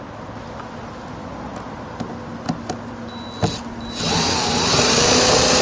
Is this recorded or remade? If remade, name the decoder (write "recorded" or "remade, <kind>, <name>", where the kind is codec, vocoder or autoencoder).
recorded